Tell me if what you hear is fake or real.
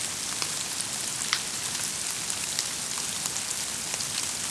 real